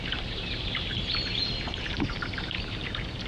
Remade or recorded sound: remade